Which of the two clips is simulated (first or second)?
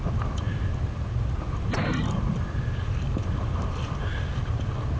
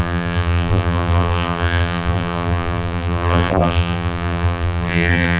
second